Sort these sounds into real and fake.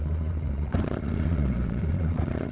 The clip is fake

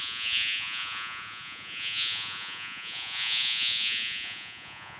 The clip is fake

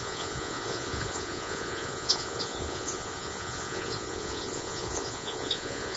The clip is fake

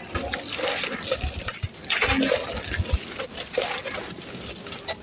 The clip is real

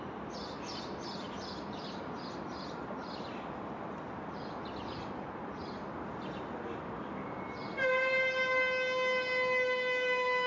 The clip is real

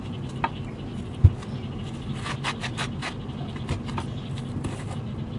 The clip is real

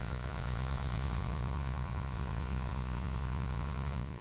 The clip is fake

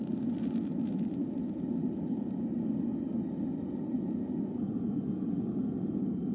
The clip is real